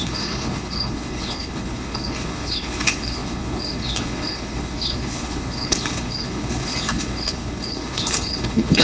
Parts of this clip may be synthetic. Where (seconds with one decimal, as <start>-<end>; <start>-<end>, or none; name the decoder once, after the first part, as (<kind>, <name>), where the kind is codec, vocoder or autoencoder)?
0.0-8.8 (codec, HILCodec)